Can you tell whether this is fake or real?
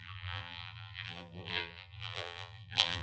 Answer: fake